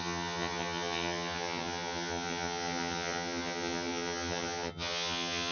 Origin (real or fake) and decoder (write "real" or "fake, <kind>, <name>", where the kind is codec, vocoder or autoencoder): fake, vocoder, HiFi-GAN